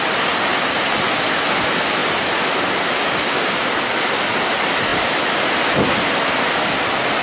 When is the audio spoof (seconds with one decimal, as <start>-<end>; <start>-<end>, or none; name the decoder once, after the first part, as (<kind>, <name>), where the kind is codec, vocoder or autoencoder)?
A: none